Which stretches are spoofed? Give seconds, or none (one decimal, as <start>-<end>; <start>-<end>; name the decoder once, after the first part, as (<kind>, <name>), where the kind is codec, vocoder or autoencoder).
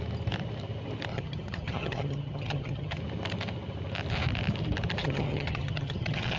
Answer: 1.1-3.0 (vocoder, HiFi-GAN); 5.0-6.4